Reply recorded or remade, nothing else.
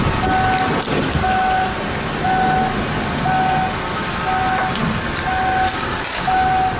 recorded